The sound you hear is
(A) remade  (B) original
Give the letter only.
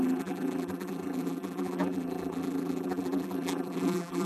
A